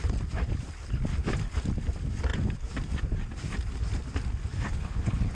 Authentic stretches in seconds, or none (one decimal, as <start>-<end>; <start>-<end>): 0.0-4.5